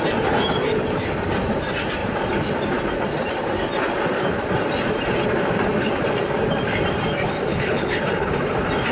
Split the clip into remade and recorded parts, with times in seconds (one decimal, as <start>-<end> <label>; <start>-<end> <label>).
0.0-7.5 recorded; 7.5-8.5 remade; 8.5-8.9 recorded